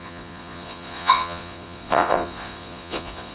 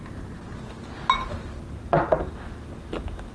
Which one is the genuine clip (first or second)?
second